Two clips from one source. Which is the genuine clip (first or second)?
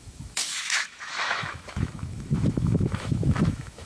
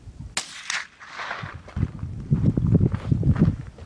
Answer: second